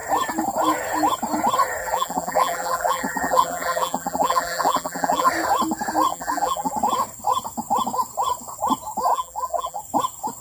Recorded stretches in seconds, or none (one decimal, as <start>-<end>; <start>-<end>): 0.0-1.8; 5.3-6.1; 6.7-9.1; 9.8-10.4

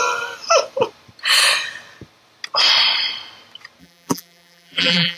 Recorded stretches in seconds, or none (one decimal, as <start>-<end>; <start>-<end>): 0.0-3.8

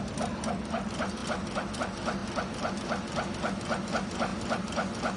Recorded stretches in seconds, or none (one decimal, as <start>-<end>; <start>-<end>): 2.2-3.9

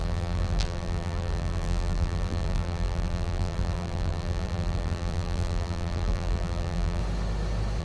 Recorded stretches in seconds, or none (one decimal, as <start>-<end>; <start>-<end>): 7.0-7.8

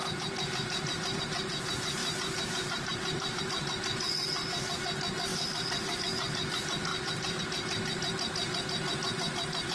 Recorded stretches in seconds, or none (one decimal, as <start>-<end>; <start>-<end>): 1.2-2.0; 3.4-5.3; 6.0-6.9; 7.4-9.7